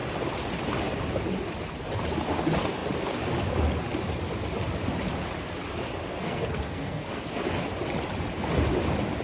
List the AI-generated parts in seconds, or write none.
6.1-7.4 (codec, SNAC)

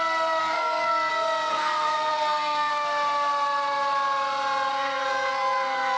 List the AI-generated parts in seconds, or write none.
0.4-1.1 (codec, SNAC); 1.5-2.7; 4.7-6.0

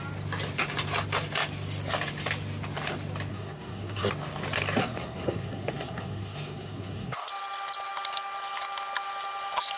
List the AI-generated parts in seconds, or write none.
3.3-4.1 (codec, SNAC); 4.8-7.3

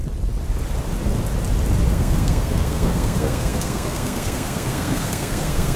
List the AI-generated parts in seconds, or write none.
1.9-5.8 (codec, SNAC)

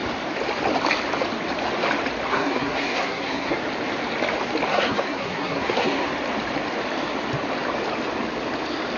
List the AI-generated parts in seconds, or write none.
2.3-3.6 (codec, SNAC); 4.7-6.1

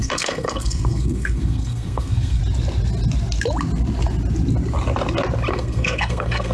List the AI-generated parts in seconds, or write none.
0.0-2.4 (codec, SNAC); 5.5-6.5